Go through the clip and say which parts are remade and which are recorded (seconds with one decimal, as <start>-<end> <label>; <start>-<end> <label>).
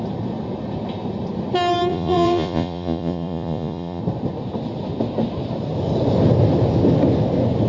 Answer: 0.0-1.9 recorded; 1.9-4.0 remade; 4.0-7.7 recorded